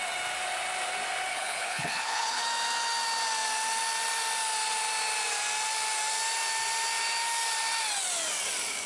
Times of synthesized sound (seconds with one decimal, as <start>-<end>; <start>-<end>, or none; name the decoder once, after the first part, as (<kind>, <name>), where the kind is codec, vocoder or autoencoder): 1.3-2.4 (codec, HILCodec)